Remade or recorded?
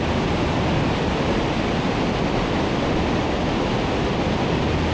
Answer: recorded